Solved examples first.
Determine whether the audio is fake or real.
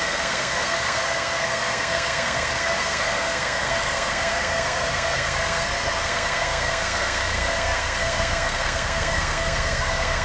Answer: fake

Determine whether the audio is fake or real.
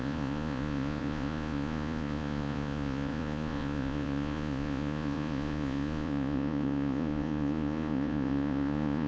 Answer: fake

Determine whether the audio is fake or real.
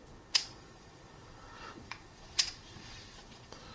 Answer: fake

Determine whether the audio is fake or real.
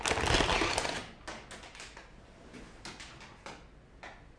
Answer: real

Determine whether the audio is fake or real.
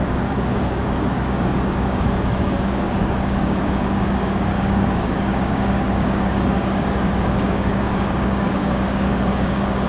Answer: fake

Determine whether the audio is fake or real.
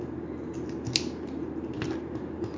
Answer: real